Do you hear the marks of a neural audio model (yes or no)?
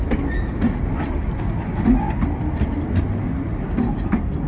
no